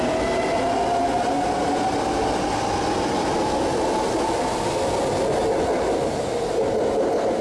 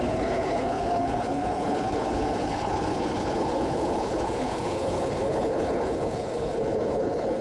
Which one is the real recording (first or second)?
first